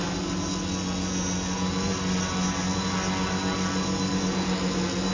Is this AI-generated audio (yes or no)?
no